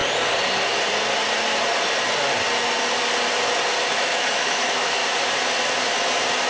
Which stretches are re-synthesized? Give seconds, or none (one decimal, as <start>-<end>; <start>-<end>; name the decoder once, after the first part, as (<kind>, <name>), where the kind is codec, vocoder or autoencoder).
3.9-5.0 (autoencoder, DAC-VAE)